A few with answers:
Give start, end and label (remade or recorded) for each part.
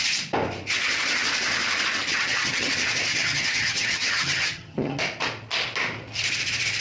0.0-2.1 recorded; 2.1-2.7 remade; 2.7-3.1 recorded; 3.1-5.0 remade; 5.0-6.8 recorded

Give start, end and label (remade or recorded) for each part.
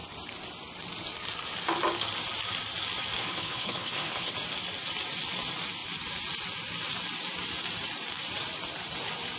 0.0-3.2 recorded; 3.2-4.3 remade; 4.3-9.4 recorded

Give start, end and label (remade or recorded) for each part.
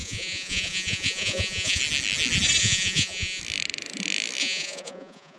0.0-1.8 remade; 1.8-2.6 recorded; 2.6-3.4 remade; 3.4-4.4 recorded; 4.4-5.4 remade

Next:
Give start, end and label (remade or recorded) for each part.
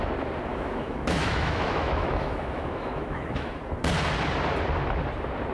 0.0-0.5 recorded; 0.5-3.6 remade; 3.6-5.5 recorded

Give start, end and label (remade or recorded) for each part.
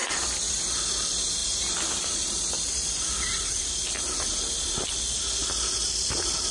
0.0-6.5 recorded